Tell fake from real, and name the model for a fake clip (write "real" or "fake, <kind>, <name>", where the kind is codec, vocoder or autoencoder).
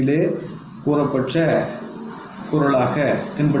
real